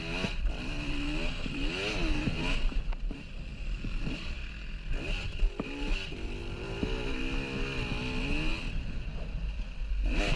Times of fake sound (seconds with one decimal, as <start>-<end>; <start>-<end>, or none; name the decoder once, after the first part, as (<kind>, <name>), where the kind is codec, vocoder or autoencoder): 2.7-3.9 (vocoder, BigVGAN v2)